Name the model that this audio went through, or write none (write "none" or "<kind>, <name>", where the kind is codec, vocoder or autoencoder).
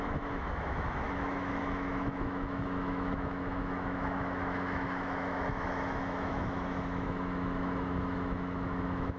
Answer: autoencoder, DAC-VAE